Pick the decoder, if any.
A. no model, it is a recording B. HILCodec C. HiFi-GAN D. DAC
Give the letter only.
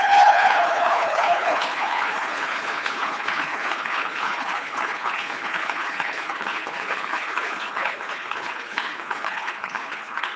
B